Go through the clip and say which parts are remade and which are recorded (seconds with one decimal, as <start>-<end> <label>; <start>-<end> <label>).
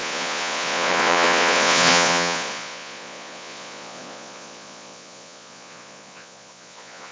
0.0-7.1 remade